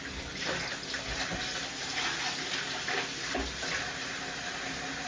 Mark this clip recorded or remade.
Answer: recorded